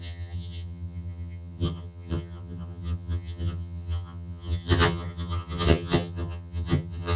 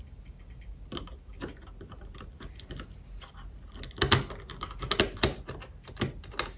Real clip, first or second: second